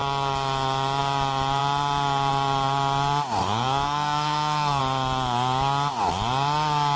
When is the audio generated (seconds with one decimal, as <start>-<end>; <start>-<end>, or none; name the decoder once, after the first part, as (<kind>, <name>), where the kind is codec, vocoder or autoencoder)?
3.4-4.8 (codec, SNAC)